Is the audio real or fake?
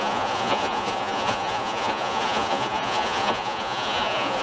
fake